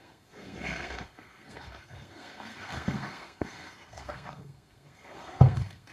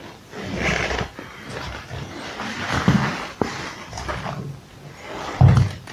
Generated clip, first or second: first